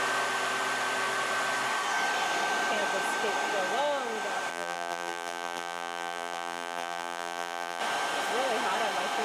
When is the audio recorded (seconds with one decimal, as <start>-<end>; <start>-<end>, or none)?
0.0-4.5; 7.8-9.2